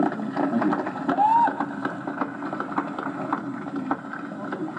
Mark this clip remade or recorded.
recorded